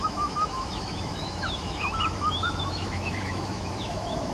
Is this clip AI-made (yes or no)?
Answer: yes